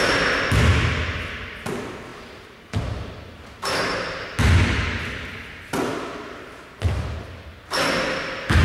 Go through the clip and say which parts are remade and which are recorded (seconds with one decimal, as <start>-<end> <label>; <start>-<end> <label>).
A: 0.0-8.6 recorded